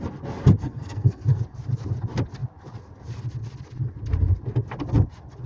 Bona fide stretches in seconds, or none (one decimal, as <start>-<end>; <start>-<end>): 0.0-0.6; 1.4-5.5